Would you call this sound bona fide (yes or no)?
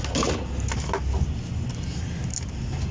yes